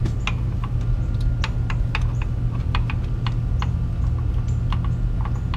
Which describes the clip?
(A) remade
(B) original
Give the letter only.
B